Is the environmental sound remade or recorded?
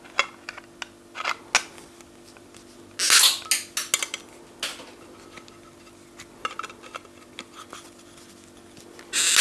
recorded